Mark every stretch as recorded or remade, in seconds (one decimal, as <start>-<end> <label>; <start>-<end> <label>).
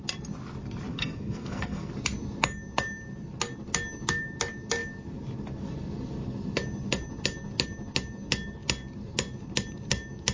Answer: 0.0-0.9 recorded; 0.9-1.9 remade; 1.9-10.3 recorded